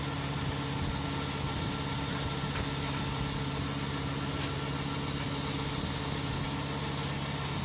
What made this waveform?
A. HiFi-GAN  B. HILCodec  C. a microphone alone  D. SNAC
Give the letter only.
C